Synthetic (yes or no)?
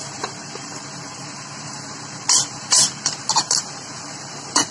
yes